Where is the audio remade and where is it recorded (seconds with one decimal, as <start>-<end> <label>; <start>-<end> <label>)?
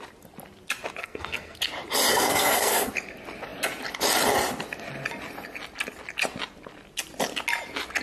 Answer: 0.0-1.0 recorded; 1.0-1.6 remade; 1.6-2.1 recorded; 2.1-2.9 remade; 2.9-8.0 recorded